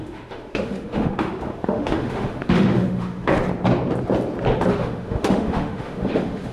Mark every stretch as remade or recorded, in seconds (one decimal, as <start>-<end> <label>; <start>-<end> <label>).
0.0-3.4 remade; 3.4-4.8 recorded; 4.8-6.5 remade